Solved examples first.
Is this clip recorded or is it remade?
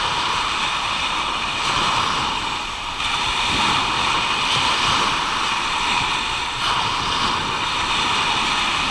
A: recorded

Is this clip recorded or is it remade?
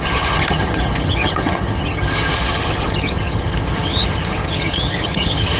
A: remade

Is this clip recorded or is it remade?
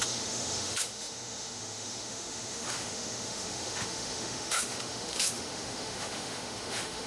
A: remade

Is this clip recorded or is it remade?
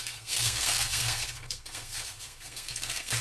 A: remade